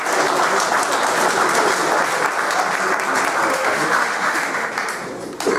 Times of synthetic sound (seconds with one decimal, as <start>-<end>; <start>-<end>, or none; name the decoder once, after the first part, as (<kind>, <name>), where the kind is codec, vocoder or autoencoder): 3.5-4.7 (autoencoder, DAC-VAE)

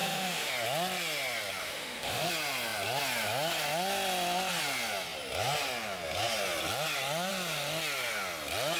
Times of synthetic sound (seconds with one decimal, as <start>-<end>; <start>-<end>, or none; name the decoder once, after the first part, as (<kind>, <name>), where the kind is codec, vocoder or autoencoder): 0.0-0.5 (autoencoder, DAC-VAE); 1.6-2.3

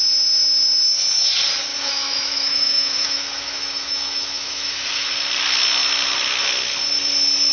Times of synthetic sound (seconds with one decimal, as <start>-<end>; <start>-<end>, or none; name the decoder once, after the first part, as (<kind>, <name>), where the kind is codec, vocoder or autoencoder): 1.7-5.1 (autoencoder, DAC-VAE)

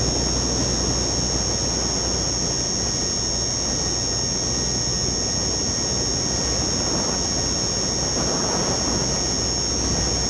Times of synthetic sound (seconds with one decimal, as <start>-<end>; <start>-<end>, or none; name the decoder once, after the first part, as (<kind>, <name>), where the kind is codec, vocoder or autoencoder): none

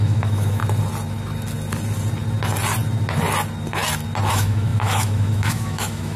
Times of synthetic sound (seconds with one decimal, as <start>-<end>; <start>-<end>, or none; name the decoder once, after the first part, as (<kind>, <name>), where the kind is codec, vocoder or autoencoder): 0.0-0.6 (autoencoder, DAC-VAE); 4.3-6.2